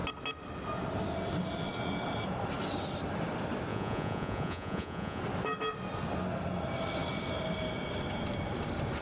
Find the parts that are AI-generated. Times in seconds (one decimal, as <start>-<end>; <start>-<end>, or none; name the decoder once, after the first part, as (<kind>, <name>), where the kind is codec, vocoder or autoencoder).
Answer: 3.7-5.2 (vocoder, Vocos)